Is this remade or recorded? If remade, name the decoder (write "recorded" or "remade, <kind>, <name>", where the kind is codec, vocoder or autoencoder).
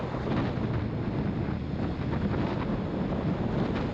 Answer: recorded